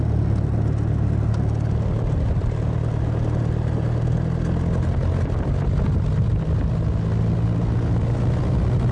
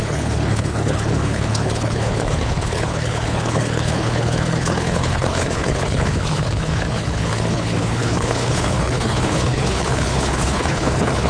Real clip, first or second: first